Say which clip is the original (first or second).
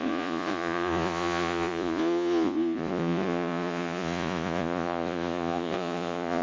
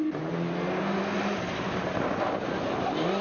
second